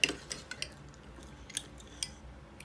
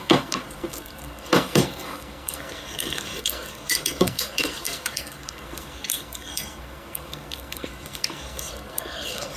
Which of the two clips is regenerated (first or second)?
second